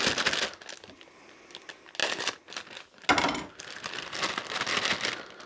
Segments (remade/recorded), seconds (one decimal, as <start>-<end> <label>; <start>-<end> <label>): 0.0-5.5 recorded